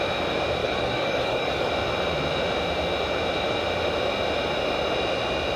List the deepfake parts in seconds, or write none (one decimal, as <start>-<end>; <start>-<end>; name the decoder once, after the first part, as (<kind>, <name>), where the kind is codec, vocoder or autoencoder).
0.6-1.7 (codec, DAC)